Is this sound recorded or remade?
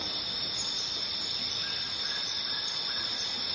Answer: recorded